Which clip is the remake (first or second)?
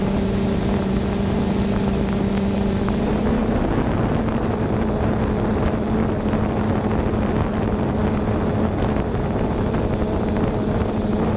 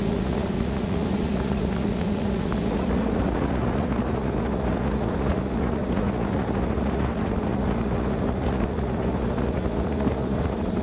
second